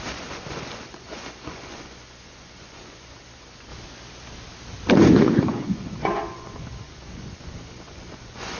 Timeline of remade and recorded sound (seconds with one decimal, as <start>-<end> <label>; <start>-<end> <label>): 0.0-3.7 remade; 3.7-4.9 recorded; 4.9-8.6 remade